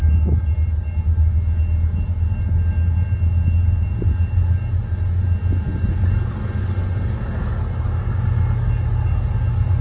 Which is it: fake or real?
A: real